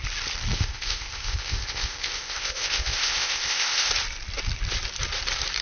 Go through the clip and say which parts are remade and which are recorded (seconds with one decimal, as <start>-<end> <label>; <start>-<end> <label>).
0.0-0.5 recorded; 0.5-3.9 remade; 3.9-5.6 recorded